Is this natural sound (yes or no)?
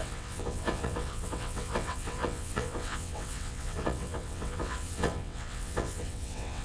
no